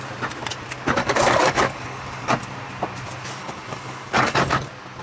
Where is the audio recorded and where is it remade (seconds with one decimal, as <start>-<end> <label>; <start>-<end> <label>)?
0.0-1.0 recorded; 1.0-2.3 remade; 2.3-3.4 recorded; 3.4-4.4 remade; 4.4-5.0 recorded